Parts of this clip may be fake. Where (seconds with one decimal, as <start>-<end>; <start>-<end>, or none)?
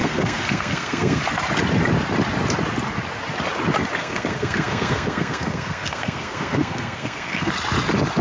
0.0-1.2; 4.0-7.5